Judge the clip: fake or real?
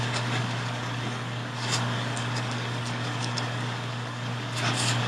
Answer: fake